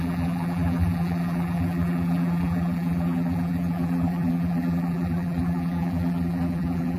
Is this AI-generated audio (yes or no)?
yes